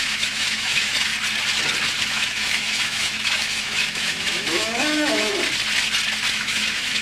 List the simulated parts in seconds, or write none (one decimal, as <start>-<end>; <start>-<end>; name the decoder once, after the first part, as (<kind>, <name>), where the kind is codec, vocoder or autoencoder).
0.0-1.1 (autoencoder, DAC-VAE); 2.0-5.3; 6.3-7.0